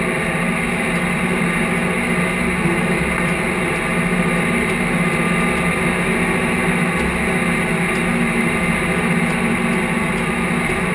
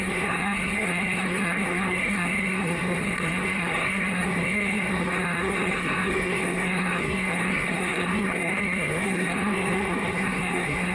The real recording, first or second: first